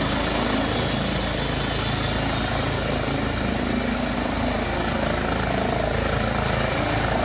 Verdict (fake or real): real